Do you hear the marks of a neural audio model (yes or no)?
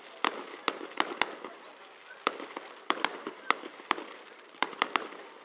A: no